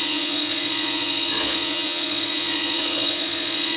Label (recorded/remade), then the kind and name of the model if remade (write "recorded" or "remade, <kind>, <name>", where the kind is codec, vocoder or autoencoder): remade, vocoder, Vocos